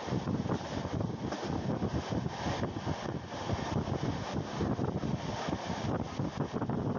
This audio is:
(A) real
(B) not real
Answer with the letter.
A